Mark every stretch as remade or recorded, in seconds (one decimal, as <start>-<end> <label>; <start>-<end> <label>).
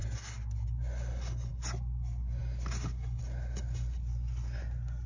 0.0-5.1 recorded